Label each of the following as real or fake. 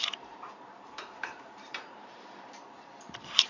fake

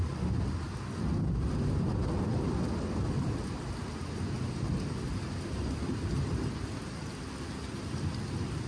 real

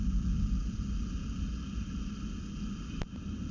real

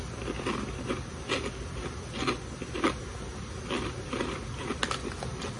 real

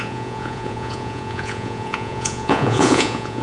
fake